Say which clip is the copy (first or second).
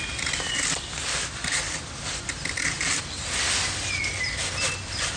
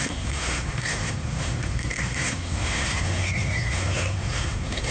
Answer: second